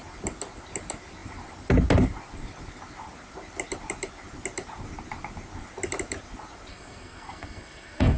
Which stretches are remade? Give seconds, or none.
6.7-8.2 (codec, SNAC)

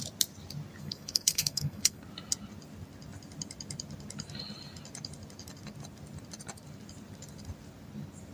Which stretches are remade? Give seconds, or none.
0.8-2.0 (codec, SNAC)

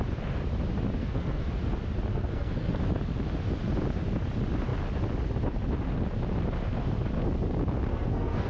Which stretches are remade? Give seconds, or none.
1.0-1.5 (codec, SNAC); 2.1-2.7; 7.9-8.5

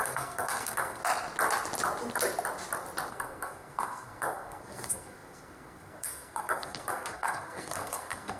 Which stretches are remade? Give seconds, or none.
0.0-1.0 (codec, SNAC); 3.1-8.4

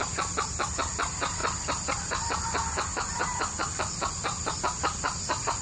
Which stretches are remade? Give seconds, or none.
none

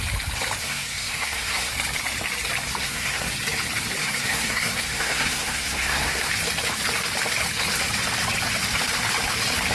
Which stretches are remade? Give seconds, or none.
0.6-1.7 (codec, SNAC); 2.8-3.3; 4.0-6.3

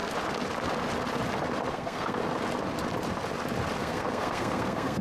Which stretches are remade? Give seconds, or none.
1.7-2.2 (codec, SNAC); 3.8-5.0

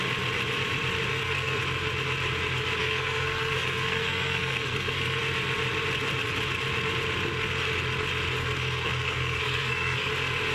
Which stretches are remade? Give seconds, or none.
1.1-1.6 (codec, SNAC); 2.8-5.2; 8.4-10.1